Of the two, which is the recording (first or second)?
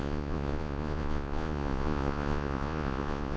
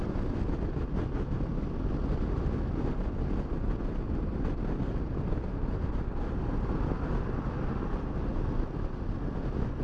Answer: second